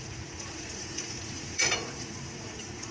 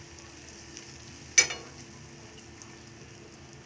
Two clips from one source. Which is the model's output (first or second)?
first